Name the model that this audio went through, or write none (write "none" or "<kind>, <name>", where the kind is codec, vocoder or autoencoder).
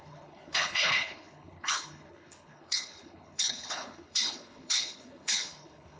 codec, HILCodec